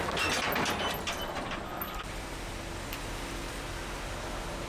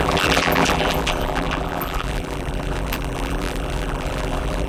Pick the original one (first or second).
first